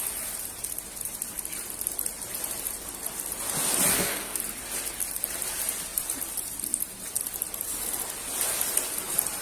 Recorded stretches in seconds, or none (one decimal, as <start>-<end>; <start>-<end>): 0.0-3.9; 4.4-9.4